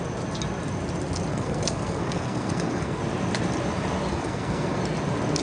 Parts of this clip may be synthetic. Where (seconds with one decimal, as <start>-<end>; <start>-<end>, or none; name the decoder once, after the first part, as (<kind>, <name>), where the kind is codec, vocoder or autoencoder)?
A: 1.3-3.0 (codec, SNAC); 4.1-4.8